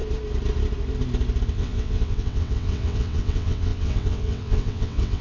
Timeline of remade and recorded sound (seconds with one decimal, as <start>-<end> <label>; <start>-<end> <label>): 0.0-1.5 recorded; 1.5-5.2 remade